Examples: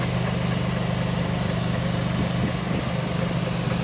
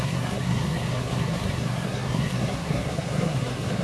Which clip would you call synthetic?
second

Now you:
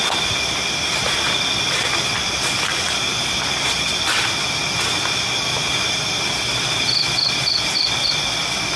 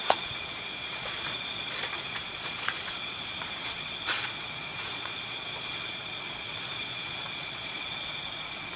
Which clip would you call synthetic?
second